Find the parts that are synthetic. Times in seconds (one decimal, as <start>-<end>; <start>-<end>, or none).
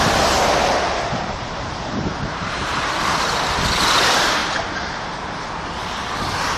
0.6-2.9; 4.4-5.5